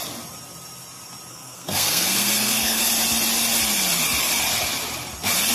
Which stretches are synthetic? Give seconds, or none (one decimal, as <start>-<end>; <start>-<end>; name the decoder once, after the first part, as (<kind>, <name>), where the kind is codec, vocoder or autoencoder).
1.3-2.9 (codec, SNAC)